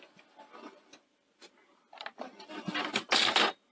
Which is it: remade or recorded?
recorded